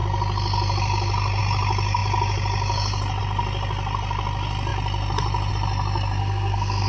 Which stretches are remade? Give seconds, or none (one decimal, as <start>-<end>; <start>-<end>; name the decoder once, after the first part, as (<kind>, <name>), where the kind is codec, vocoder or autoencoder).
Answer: 6.2-6.9 (codec, SNAC)